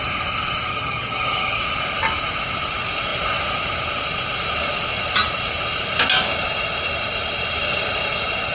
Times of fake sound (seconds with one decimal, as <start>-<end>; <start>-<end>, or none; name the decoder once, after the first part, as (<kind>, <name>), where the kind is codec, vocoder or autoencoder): 0.7-1.6 (vocoder, HiFi-GAN)